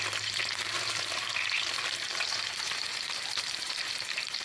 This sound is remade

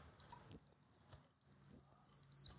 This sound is recorded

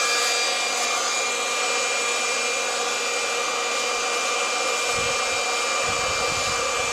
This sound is recorded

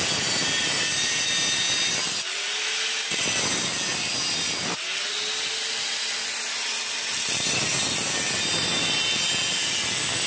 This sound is recorded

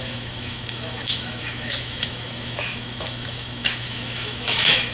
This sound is remade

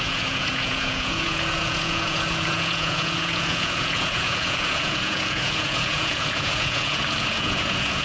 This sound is remade